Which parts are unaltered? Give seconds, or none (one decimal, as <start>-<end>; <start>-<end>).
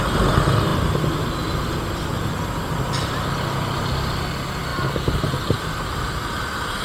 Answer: 0.0-4.7; 5.3-6.8